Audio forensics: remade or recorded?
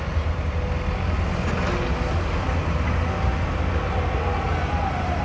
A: recorded